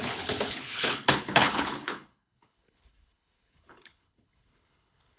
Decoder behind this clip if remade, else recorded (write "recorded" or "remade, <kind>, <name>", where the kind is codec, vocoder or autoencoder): remade, codec, HILCodec